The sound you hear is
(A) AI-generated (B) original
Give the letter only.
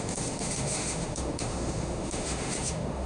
A